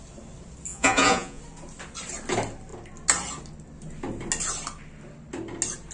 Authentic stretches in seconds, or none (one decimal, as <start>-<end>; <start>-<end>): 0.0-0.7; 1.4-5.9